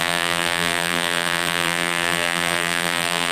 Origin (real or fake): fake